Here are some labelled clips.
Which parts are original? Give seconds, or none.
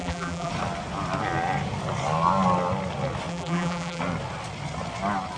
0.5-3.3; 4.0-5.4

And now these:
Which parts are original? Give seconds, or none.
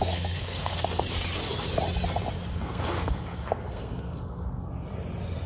1.0-2.5; 4.7-5.5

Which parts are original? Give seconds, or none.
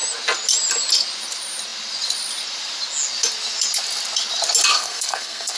0.0-4.7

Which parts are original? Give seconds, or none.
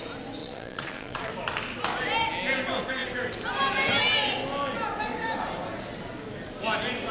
0.0-0.4; 1.3-7.1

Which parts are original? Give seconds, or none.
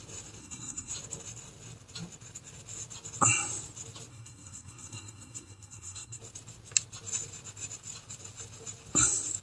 0.0-0.4; 0.9-4.1; 6.2-9.4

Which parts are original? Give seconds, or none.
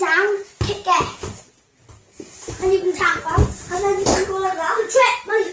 0.0-5.5